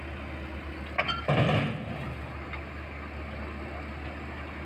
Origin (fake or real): real